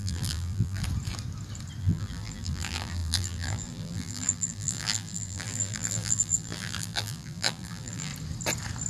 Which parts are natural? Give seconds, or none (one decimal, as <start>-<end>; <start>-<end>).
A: 0.8-1.8; 8.1-8.9